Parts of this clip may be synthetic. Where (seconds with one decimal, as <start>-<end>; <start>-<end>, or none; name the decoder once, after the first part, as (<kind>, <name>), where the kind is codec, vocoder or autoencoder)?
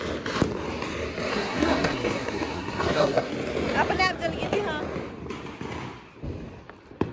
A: 1.3-3.3 (codec, SNAC)